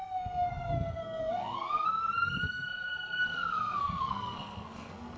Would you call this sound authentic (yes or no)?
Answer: no